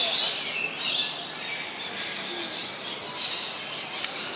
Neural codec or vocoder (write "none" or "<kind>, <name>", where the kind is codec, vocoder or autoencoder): none